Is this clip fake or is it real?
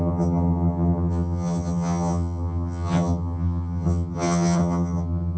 fake